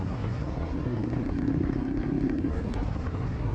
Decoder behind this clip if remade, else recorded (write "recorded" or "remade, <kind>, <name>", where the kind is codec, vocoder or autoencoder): remade, codec, SNAC